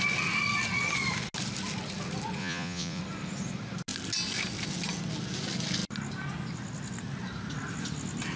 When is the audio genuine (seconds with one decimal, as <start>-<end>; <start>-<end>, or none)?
0.0-2.4; 3.0-8.4